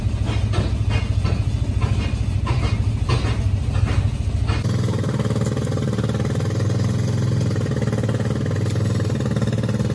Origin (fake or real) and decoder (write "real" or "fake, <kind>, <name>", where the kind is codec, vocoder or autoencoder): real